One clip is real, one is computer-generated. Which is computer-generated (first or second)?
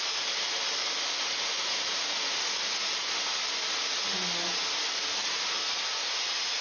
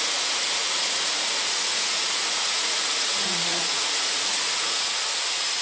second